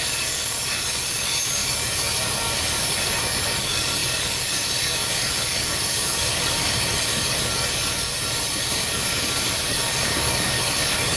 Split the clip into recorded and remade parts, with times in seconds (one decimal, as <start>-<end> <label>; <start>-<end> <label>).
0.0-8.1 remade; 8.1-8.6 recorded; 8.6-11.2 remade